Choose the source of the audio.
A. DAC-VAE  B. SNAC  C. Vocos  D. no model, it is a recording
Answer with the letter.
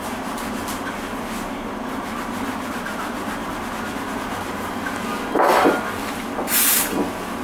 D